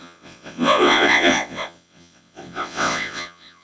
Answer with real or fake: fake